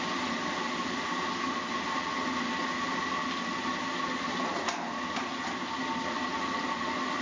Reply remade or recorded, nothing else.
recorded